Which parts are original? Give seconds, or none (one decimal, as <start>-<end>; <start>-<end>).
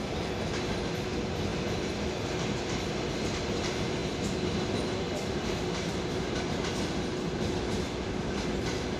0.0-1.5; 2.1-9.0